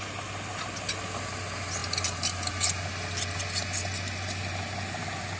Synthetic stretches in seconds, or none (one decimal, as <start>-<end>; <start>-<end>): none